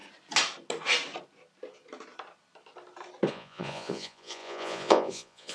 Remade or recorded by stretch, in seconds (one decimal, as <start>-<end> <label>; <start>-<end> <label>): 0.0-3.3 recorded; 3.3-5.5 remade